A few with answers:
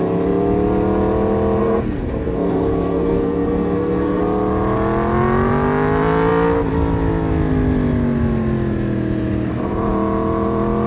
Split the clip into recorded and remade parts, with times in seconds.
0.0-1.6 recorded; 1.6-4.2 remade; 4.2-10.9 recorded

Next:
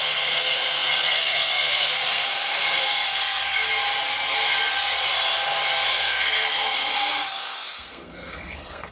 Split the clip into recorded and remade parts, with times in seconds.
0.0-3.7 remade; 3.7-5.9 recorded; 5.9-8.9 remade

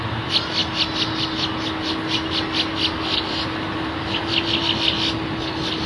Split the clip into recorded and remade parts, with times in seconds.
0.0-5.9 recorded

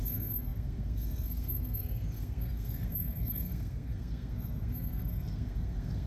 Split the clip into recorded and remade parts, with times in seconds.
0.0-6.1 remade

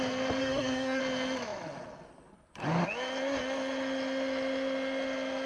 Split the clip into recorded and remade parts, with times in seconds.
0.0-0.4 recorded; 0.4-1.0 remade; 1.0-5.5 recorded

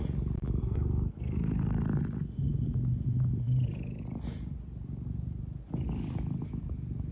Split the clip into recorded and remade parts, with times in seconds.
0.0-0.6 recorded; 0.6-1.8 remade; 1.8-7.1 recorded

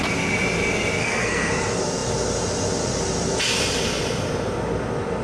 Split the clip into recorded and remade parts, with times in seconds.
0.0-1.0 recorded; 1.0-1.5 remade; 1.5-5.2 recorded